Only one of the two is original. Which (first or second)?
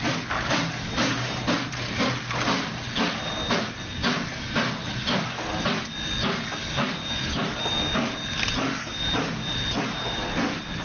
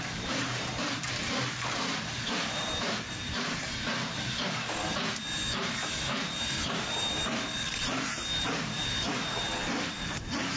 first